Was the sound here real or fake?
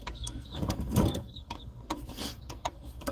fake